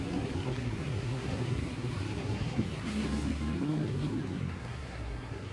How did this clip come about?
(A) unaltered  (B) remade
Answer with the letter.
B